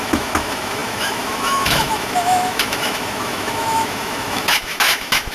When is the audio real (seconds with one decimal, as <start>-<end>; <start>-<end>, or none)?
none